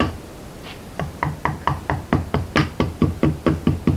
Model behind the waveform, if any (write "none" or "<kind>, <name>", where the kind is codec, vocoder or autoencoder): none